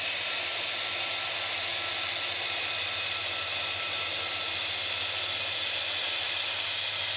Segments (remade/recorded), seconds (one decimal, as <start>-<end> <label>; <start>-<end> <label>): 0.0-7.2 recorded